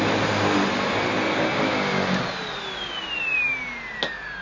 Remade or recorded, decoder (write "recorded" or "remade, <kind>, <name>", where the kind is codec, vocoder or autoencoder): recorded